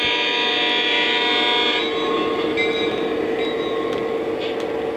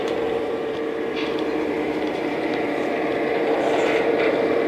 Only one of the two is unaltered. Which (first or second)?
first